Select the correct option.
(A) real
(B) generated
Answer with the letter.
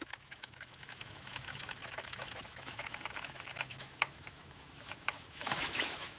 B